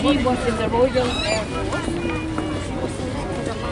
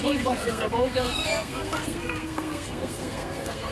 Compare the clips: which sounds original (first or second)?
first